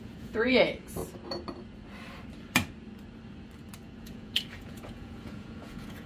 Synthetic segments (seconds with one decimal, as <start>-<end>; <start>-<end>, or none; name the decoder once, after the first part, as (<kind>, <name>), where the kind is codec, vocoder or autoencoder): 0.0-1.0 (vocoder, Vocos); 4.0-6.1